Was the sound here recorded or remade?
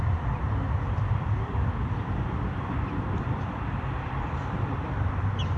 remade